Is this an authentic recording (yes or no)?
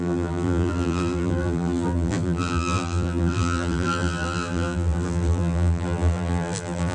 no